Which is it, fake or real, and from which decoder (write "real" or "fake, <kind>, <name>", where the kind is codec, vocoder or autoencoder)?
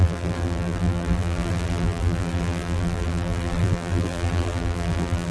fake, vocoder, BigVGAN v2